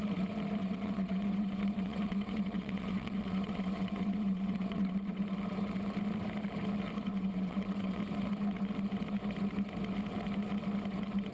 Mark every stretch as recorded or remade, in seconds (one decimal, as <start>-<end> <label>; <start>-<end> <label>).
0.0-0.6 recorded; 0.6-5.2 remade; 5.2-7.1 recorded; 7.1-8.0 remade; 8.0-11.3 recorded